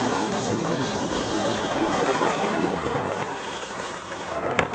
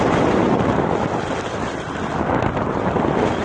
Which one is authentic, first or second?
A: second